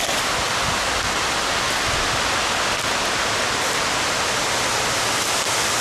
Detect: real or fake real